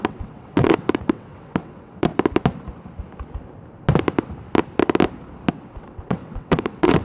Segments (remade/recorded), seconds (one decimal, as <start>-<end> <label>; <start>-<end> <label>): 0.0-2.1 remade; 2.1-5.5 recorded; 5.5-7.0 remade